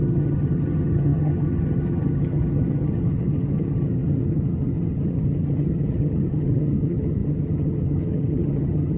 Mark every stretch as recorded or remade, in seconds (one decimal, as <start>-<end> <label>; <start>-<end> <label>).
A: 0.0-9.0 remade